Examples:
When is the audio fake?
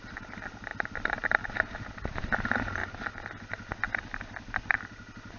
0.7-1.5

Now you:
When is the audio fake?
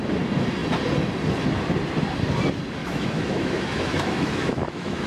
2.8-5.1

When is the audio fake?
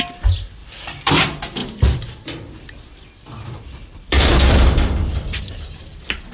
0.6-1.1; 1.6-5.4